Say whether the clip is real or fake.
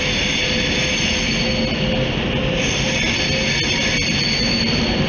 real